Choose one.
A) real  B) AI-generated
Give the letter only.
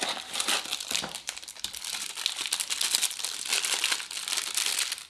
A